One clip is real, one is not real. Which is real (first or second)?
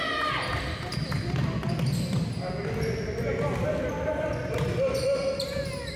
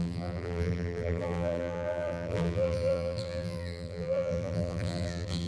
first